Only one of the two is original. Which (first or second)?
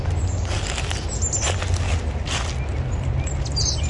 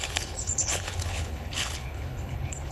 first